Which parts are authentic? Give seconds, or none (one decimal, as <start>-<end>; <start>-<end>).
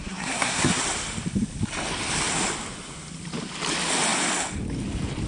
0.8-5.3